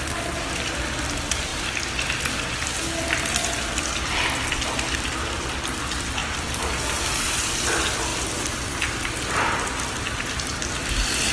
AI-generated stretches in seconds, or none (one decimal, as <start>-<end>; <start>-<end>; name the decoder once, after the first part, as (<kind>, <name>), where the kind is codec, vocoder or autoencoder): 6.2-6.7 (vocoder, BigVGAN v2)